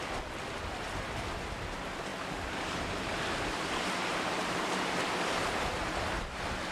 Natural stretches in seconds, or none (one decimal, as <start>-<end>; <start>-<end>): 0.0-6.7